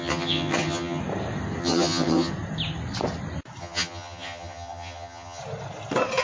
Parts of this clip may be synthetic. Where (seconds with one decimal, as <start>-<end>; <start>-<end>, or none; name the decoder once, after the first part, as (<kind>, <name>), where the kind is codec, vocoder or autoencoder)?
0.0-1.0 (vocoder, HiFi-GAN); 1.6-2.3; 3.6-5.4